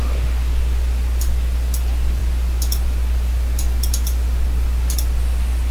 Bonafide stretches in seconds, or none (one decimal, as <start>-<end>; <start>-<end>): 0.0-5.7